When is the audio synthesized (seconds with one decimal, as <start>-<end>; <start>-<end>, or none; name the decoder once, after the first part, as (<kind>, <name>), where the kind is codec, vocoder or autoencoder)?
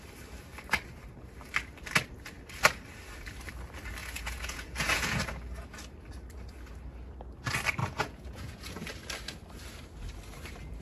4.0-5.2 (vocoder, Vocos); 7.8-8.9